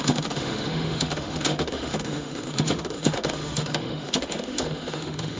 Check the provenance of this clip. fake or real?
fake